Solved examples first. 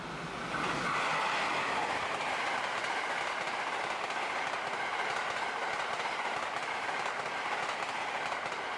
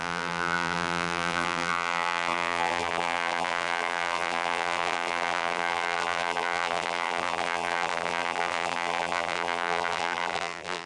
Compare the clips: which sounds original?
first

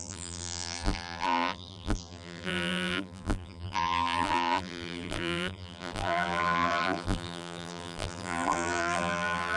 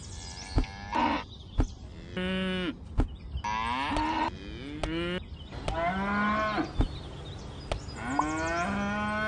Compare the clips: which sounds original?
second